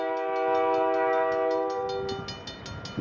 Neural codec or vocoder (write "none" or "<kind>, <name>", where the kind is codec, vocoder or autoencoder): none